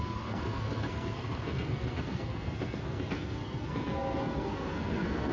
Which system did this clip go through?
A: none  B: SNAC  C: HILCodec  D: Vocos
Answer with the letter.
B